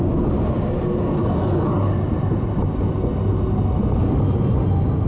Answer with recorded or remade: recorded